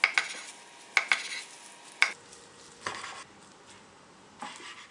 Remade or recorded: recorded